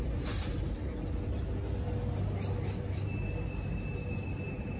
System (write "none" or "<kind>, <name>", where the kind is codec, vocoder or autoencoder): none